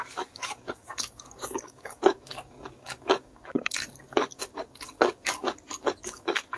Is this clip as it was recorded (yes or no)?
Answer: no